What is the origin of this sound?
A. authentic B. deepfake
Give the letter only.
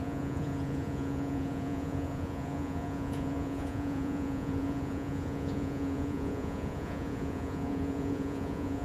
B